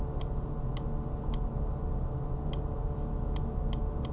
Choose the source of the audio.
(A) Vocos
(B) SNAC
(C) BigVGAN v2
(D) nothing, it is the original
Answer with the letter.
D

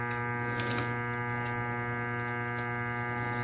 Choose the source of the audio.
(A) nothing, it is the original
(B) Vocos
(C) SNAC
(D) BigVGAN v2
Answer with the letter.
A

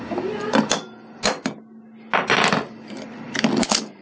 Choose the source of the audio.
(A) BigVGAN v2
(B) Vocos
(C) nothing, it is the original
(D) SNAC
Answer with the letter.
C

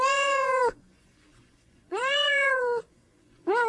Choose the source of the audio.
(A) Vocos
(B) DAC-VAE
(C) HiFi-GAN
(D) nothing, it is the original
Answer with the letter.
A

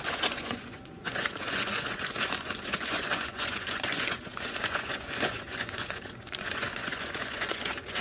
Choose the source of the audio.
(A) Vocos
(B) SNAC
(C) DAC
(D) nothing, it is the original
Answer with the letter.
A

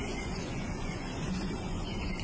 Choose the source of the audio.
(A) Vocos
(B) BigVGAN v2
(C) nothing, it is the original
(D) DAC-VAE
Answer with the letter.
A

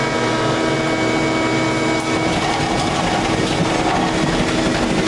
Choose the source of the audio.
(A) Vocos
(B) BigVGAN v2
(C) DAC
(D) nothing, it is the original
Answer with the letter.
D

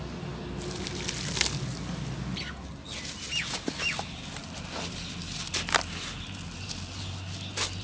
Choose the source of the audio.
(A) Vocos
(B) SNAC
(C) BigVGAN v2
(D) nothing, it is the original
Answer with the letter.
D